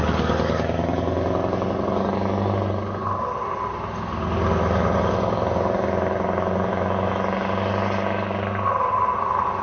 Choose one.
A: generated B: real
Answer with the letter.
B